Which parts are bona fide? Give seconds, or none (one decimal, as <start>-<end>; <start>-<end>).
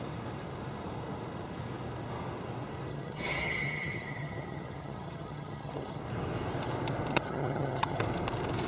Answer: 0.0-2.9; 6.0-7.1; 8.0-8.7